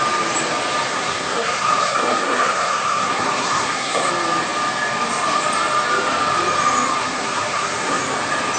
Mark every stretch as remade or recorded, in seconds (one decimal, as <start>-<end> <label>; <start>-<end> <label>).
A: 0.0-0.9 recorded; 0.9-4.1 remade; 4.1-7.0 recorded; 7.0-8.0 remade; 8.0-8.6 recorded